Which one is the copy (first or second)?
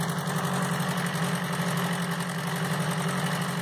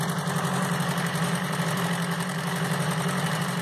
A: second